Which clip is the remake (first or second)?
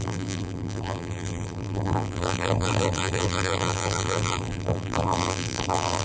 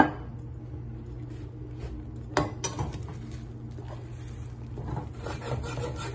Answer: first